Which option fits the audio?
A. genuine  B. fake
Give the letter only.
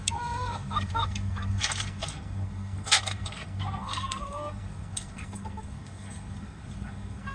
B